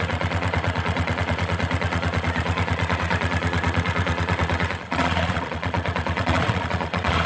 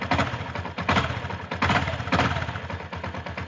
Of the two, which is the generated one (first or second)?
first